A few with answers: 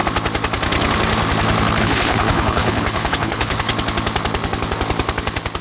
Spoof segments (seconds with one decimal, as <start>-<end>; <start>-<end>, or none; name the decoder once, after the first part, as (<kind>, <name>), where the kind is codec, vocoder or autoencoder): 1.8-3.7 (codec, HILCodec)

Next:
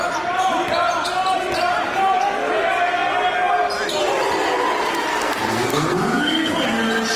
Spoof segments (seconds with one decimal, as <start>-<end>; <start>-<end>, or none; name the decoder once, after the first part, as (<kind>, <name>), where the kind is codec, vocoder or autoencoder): 5.1-6.6 (codec, SNAC)

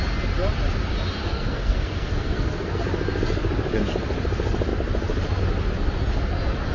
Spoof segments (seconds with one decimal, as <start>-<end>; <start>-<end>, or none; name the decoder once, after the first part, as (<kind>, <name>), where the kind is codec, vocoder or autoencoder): 1.2-2.8 (codec, SNAC)

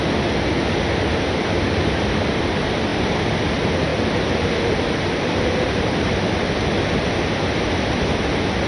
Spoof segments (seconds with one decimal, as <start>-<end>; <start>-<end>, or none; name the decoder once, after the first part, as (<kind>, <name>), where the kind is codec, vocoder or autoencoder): none

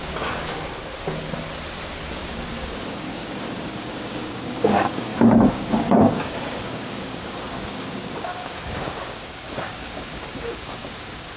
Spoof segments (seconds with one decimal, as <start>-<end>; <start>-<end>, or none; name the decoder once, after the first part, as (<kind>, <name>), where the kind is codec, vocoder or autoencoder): 0.0-0.9 (codec, DAC); 2.3-11.4

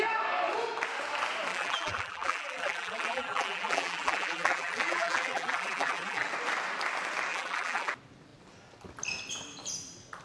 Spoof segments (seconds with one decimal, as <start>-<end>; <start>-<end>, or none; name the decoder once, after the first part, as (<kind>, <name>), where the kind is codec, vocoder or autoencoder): 1.5-6.3 (vocoder, BigVGAN v2); 7.3-7.9

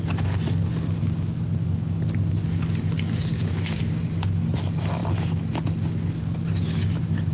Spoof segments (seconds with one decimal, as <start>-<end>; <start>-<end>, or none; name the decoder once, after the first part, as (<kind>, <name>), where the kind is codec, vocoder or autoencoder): 1.6-2.1 (codec, DAC); 3.3-4.0